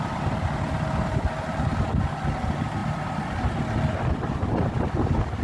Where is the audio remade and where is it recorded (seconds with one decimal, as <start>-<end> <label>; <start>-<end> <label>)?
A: 0.0-5.4 recorded